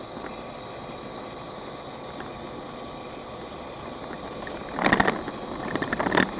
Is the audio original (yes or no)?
yes